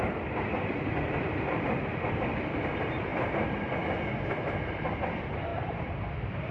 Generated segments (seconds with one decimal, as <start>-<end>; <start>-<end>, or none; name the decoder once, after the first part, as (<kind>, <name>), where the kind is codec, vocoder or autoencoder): 0.0-3.1 (vocoder, BigVGAN v2); 4.3-5.5

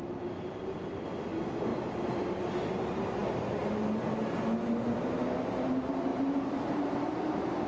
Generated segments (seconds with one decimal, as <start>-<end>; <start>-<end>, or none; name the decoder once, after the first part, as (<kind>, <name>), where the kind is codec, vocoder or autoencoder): 1.7-2.5 (vocoder, BigVGAN v2); 6.1-7.3

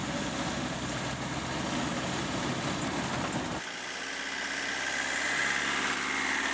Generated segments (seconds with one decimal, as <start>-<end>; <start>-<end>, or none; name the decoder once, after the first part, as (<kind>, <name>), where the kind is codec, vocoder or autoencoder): 0.0-1.3 (vocoder, BigVGAN v2); 1.9-2.8

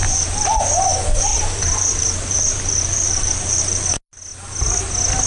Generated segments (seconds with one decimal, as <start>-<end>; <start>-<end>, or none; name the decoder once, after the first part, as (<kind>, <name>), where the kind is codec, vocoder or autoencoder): 0.0-0.6 (vocoder, BigVGAN v2); 1.3-3.9

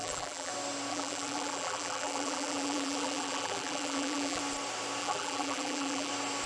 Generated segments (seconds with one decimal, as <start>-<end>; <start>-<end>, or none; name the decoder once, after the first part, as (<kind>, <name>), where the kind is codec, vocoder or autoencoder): 0.0-0.5 (vocoder, BigVGAN v2); 0.9-4.4; 5.0-6.1

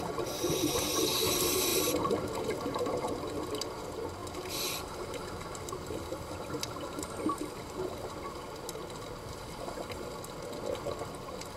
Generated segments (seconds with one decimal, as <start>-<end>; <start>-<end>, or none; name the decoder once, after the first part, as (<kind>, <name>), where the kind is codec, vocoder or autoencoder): 1.7-3.4 (vocoder, BigVGAN v2)